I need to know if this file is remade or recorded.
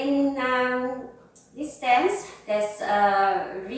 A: recorded